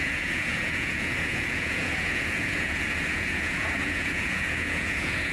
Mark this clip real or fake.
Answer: fake